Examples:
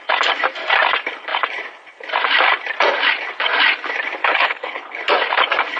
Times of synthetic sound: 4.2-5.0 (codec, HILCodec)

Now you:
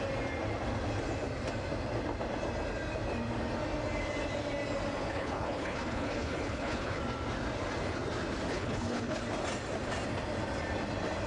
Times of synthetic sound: 5.0-7.0 (codec, HILCodec); 8.5-9.2

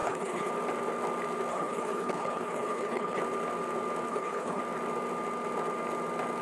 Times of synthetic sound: 0.0-0.5 (codec, HILCodec); 1.5-3.2; 4.1-4.6

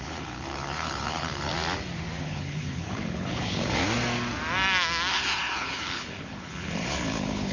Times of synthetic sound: 0.0-1.5 (codec, HILCodec); 2.2-3.8; 5.1-7.5

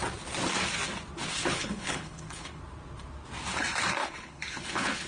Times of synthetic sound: 1.4-2.6 (codec, HILCodec); 4.0-5.1

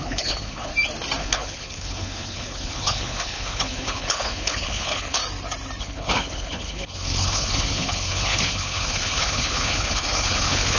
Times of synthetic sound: 0.0-0.7 (codec, HILCodec); 1.2-5.2; 5.8-10.8